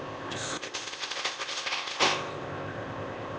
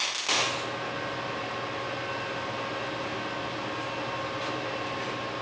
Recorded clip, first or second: second